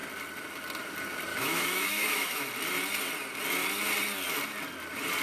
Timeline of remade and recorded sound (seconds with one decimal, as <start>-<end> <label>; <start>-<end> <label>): 0.0-1.3 recorded; 1.3-2.5 remade; 2.5-5.2 recorded